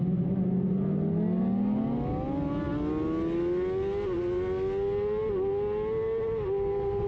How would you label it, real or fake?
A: real